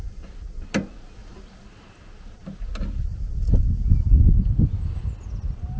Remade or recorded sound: recorded